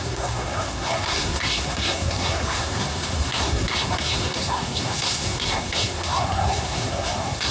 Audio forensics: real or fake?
fake